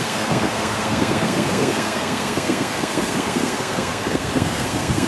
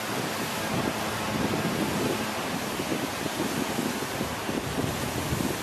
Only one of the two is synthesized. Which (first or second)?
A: first